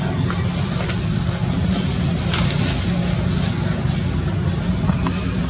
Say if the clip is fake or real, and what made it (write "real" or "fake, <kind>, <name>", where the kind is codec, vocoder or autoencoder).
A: real